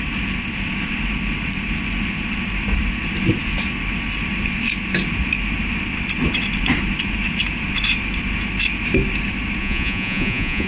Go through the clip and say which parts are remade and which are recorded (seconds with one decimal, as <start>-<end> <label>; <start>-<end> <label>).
0.0-9.6 recorded; 9.6-10.7 remade